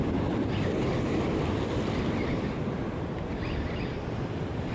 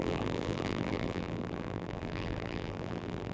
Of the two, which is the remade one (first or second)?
second